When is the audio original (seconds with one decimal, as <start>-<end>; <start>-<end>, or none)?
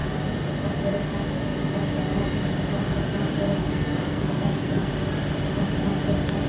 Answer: 0.0-3.6; 4.9-6.5